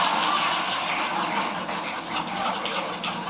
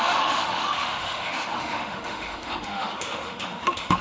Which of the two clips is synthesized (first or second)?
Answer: second